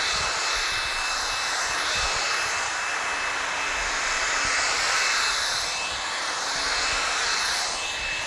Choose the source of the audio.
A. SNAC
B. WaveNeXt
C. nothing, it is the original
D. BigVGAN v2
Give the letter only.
C